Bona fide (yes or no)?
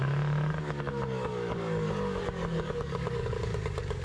no